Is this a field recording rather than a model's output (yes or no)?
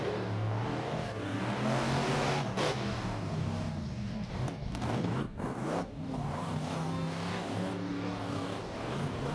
no